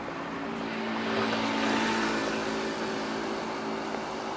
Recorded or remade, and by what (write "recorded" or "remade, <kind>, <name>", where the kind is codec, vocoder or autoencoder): recorded